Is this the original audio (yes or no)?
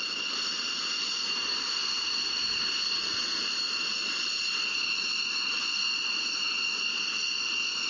yes